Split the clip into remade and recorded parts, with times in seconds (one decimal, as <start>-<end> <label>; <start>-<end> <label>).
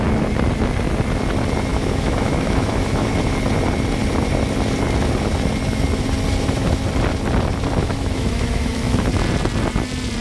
0.0-1.7 recorded; 1.7-3.2 remade; 3.2-7.8 recorded; 7.8-9.1 remade; 9.1-10.2 recorded